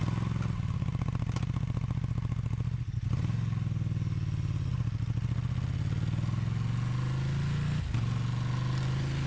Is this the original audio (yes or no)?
yes